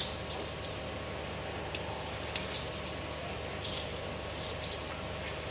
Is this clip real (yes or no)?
yes